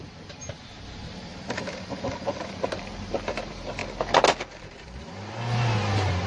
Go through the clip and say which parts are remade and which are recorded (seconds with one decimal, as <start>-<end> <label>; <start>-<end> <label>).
0.0-1.3 remade; 1.3-2.2 recorded; 2.2-3.8 remade; 3.8-4.6 recorded; 4.6-6.3 remade